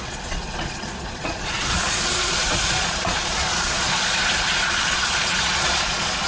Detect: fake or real fake